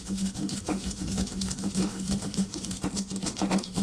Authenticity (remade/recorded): remade